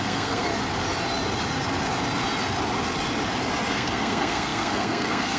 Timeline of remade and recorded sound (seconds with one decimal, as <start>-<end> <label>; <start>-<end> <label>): 0.0-0.5 remade; 0.5-3.7 recorded; 3.7-5.4 remade